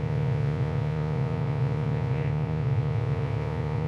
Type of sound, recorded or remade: remade